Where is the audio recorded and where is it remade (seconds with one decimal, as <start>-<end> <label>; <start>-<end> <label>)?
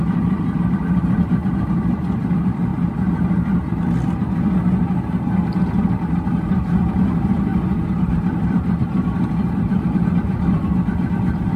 0.0-2.7 remade; 2.7-6.9 recorded; 6.9-11.6 remade